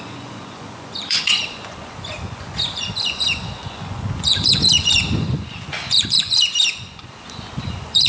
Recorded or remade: remade